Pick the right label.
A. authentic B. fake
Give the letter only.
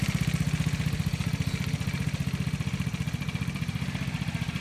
A